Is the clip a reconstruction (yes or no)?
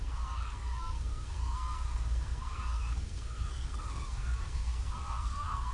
yes